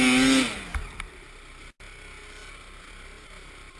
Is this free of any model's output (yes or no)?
yes